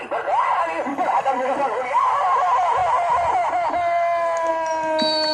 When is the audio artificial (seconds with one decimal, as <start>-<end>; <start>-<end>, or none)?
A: 0.9-2.0